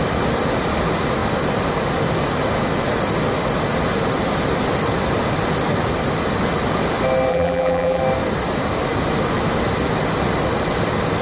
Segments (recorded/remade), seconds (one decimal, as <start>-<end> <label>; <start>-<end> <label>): 0.0-7.3 recorded; 7.3-8.0 remade; 8.0-11.2 recorded